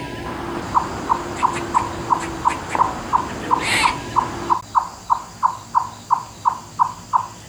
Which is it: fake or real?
real